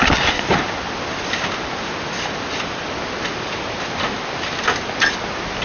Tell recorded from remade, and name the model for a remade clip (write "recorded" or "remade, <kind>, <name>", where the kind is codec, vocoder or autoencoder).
recorded